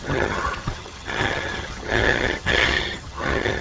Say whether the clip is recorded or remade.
remade